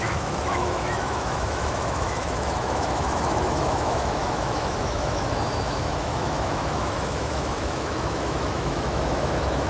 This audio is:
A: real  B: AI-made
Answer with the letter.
B